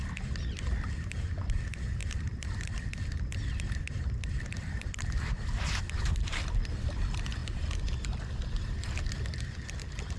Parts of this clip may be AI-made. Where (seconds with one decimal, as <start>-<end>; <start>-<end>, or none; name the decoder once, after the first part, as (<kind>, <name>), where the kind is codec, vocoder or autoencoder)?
0.0-7.4 (vocoder, BigVGAN v2); 9.4-10.2